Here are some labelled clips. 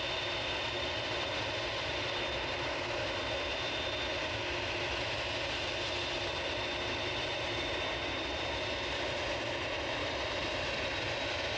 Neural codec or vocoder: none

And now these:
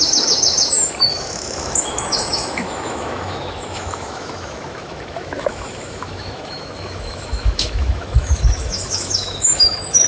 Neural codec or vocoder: autoencoder, DAC-VAE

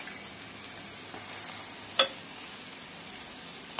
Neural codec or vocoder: none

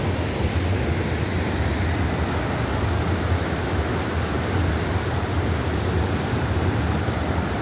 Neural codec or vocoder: none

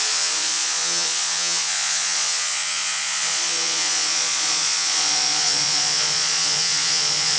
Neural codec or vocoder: vocoder, Vocos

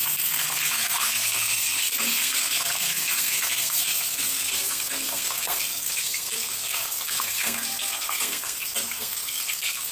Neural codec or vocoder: codec, SNAC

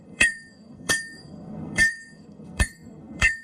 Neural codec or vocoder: codec, SNAC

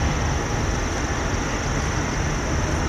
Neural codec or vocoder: none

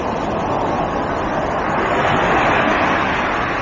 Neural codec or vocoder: none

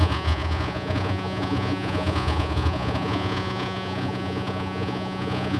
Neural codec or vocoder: vocoder, Vocos